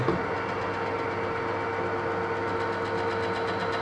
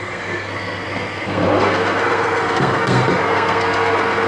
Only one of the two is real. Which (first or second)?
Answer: first